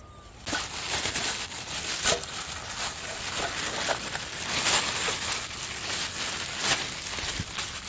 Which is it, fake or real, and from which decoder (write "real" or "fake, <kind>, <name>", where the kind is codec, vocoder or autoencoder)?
real